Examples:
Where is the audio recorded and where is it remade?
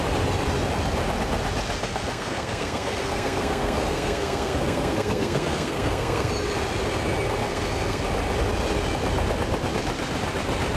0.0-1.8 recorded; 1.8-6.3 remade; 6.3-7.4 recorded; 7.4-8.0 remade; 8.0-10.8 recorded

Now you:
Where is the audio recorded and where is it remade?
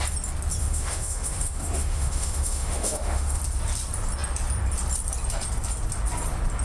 0.0-0.6 recorded; 0.6-3.4 remade; 3.4-6.6 recorded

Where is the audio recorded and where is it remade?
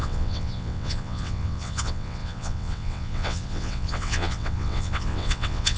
0.0-5.8 remade